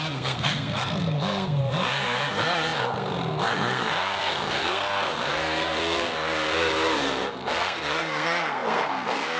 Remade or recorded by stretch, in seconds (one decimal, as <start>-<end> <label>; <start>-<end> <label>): 0.0-9.4 remade